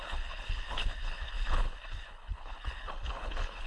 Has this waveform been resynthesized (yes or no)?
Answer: yes